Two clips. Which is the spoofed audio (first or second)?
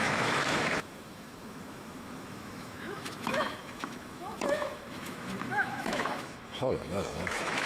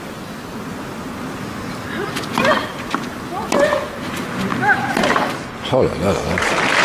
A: first